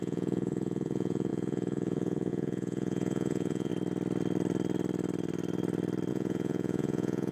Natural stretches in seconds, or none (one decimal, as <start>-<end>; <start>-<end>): 3.7-6.1